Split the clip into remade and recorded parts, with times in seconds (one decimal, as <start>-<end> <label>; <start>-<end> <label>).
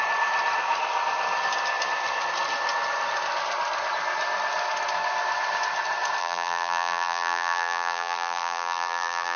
0.0-6.2 recorded; 6.2-9.4 remade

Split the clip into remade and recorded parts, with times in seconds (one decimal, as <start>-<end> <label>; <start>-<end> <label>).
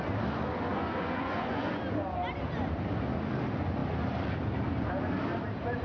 0.0-0.7 recorded; 0.7-1.8 remade; 1.8-5.8 recorded